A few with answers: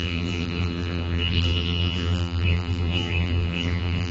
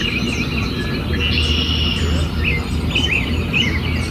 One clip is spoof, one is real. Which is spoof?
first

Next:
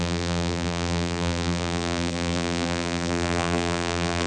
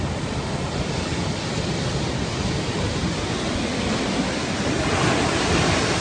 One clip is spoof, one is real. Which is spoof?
first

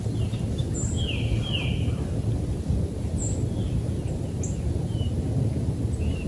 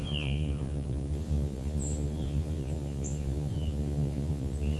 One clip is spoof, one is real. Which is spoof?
second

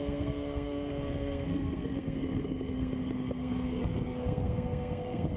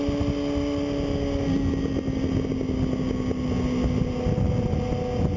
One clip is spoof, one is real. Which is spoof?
first